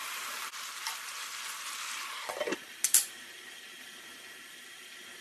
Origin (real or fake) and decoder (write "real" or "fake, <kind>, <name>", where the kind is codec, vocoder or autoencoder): real